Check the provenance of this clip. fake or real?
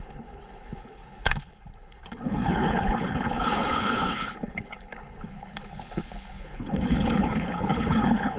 fake